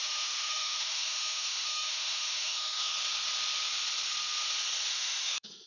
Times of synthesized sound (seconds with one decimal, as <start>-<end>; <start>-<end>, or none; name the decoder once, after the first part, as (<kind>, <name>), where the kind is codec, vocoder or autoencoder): 0.0-2.9 (autoencoder, DAC-VAE); 4.9-5.7